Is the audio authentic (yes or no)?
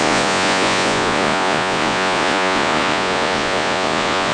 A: no